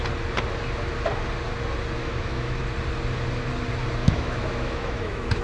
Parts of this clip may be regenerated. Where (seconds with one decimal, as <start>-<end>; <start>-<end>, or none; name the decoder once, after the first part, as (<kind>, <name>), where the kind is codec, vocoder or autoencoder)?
2.0-2.6 (autoencoder, DAC-VAE); 4.0-5.4